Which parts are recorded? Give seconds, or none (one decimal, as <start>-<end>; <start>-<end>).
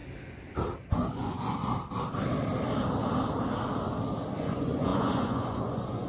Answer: 0.0-0.9; 1.6-4.4